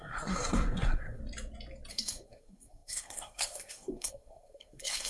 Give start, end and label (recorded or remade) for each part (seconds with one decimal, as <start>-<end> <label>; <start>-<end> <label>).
0.0-1.2 remade; 1.2-1.9 recorded; 1.9-5.1 remade